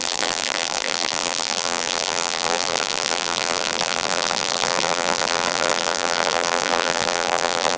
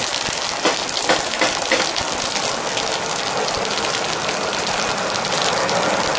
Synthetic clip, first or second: first